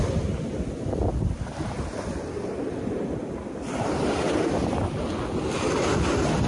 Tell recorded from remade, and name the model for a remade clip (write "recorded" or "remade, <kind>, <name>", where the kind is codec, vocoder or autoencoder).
recorded